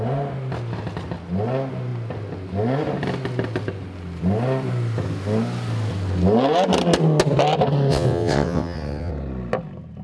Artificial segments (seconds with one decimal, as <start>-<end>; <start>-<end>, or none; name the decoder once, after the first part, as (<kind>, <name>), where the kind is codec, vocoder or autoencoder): 7.9-9.1 (vocoder, WaveNeXt)